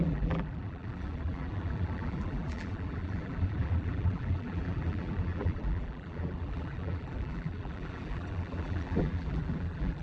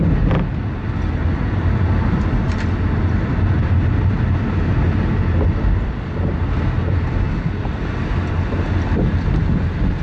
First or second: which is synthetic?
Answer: first